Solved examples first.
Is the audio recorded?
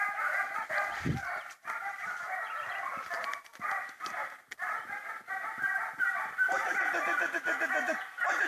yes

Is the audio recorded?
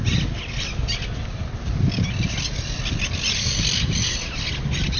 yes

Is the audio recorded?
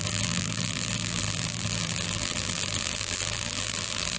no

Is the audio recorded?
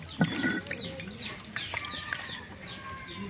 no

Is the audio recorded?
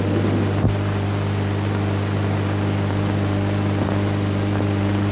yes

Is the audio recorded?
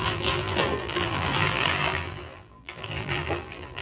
no